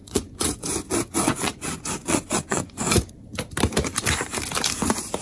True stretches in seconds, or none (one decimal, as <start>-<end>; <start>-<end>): 3.1-5.2